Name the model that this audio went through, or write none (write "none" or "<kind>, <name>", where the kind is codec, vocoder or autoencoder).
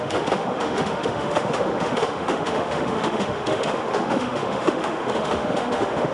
autoencoder, DAC-VAE